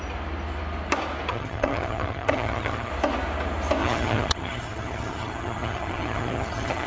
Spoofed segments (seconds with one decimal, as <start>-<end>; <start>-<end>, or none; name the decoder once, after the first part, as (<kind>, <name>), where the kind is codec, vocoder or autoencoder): 1.3-2.9 (vocoder, HiFi-GAN); 3.8-6.9